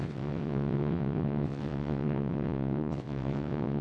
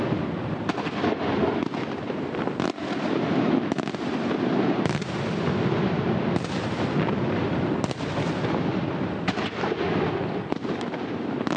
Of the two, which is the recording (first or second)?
second